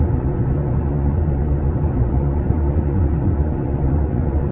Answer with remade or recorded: remade